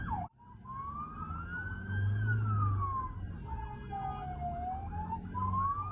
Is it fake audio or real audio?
real